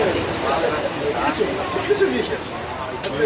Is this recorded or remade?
recorded